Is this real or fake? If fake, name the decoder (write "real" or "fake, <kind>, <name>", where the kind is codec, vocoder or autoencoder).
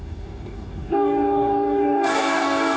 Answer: fake, codec, DAC